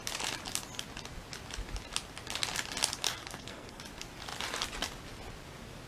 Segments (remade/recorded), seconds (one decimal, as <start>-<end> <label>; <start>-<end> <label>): 0.0-3.2 recorded; 3.2-3.8 remade; 3.8-5.9 recorded